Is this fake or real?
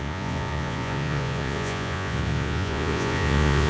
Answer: fake